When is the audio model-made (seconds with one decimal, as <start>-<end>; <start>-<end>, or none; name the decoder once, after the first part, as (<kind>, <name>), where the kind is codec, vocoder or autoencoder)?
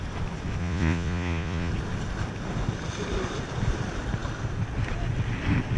0.6-1.7 (vocoder, Vocos)